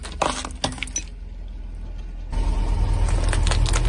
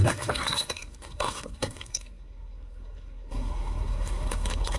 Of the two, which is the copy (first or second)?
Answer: second